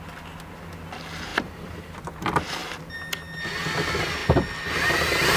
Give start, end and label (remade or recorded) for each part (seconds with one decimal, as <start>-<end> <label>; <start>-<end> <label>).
0.0-1.3 recorded; 1.3-2.0 remade; 2.0-2.6 recorded; 2.6-3.5 remade; 3.5-4.2 recorded; 4.2-4.8 remade; 4.8-5.4 recorded